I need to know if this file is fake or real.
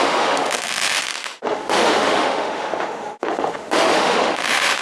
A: fake